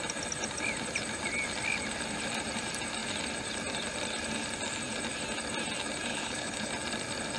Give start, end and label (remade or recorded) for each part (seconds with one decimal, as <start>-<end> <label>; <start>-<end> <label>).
0.0-6.1 recorded; 6.1-6.7 remade; 6.7-7.4 recorded